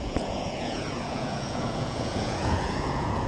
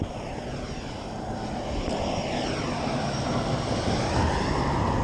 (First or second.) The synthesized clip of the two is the first